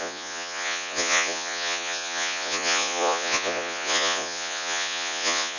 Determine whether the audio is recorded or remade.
remade